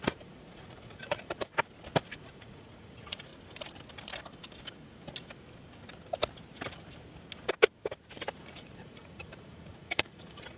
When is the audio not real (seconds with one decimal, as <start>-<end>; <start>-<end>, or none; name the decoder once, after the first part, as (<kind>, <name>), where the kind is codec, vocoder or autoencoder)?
0.0-1.5 (vocoder, Vocos); 2.2-3.3; 8.3-10.6